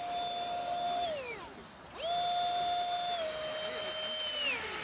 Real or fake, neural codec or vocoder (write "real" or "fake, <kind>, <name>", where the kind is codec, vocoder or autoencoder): real